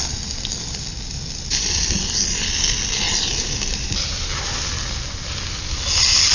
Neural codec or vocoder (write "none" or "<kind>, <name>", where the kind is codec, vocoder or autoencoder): none